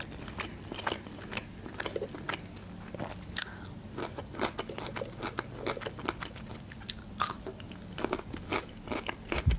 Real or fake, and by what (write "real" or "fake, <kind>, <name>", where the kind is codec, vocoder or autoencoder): real